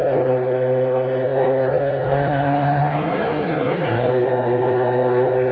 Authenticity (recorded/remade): remade